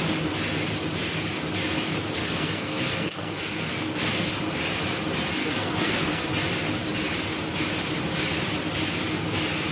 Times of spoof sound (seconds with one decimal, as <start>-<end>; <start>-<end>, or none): 2.2-4.3; 5.4-6.3